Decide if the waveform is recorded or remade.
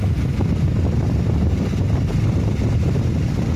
recorded